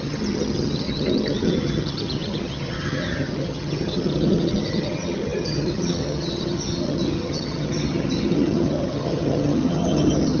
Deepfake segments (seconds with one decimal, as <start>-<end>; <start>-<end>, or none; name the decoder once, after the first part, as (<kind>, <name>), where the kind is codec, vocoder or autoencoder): 0.0-10.4 (vocoder, HiFi-GAN)